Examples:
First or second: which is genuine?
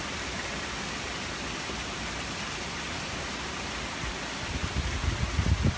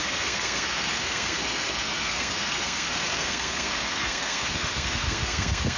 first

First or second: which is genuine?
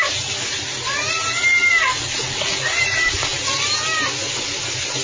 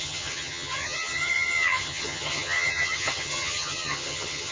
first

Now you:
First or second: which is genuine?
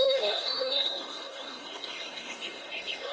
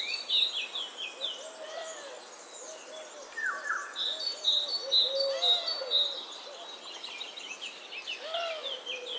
second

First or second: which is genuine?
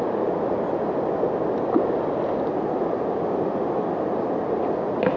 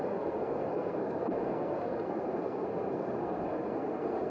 first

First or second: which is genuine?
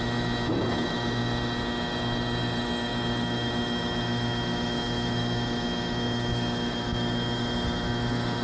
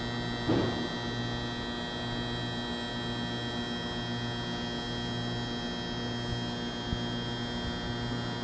second